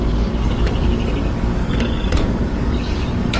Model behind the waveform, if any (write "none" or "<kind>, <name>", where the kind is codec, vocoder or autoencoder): codec, DAC